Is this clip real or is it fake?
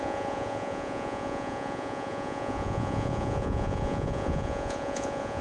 fake